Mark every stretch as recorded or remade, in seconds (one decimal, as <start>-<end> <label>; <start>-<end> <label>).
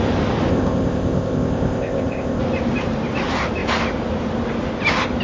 0.0-0.5 recorded; 0.5-2.4 remade; 2.4-5.2 recorded